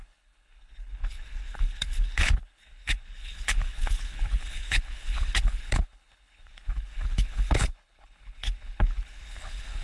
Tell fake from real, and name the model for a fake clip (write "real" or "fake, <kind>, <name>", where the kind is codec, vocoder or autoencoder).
fake, codec, HILCodec